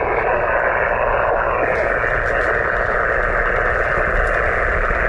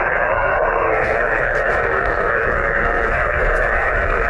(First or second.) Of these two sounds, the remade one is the second